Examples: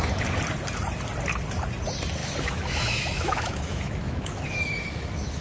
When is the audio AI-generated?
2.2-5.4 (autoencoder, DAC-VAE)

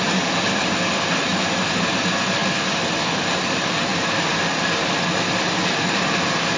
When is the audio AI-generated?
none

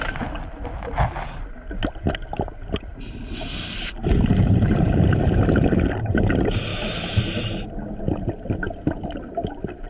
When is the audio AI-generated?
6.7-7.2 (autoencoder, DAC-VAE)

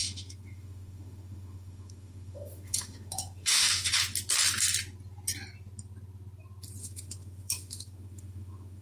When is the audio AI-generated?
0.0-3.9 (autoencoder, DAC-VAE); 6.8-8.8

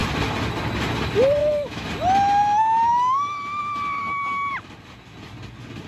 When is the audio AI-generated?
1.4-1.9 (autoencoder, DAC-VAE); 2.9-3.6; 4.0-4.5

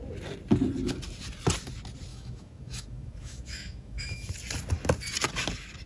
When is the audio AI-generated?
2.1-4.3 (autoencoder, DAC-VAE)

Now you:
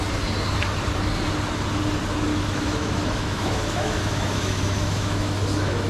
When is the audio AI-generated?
2.3-5.9 (autoencoder, DAC-VAE)

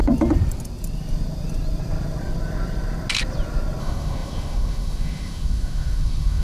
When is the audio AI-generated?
3.8-6.4 (autoencoder, DAC-VAE)